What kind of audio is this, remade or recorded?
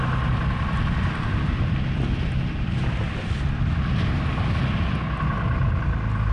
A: recorded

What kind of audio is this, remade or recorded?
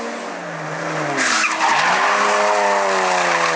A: recorded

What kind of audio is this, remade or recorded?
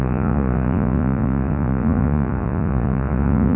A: remade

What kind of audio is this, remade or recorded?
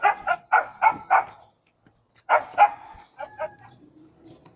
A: recorded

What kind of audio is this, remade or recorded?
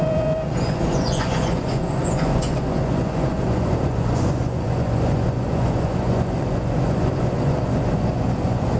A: remade